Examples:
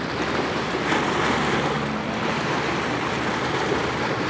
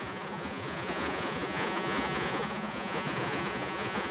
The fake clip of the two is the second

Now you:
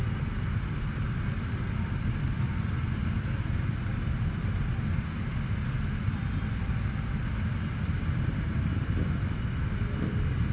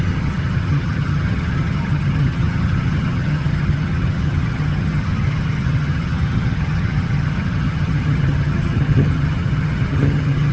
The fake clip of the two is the second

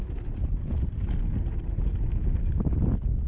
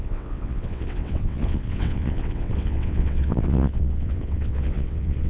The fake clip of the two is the second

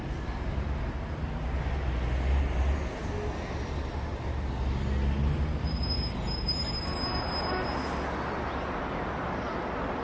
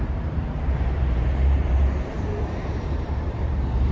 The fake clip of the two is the second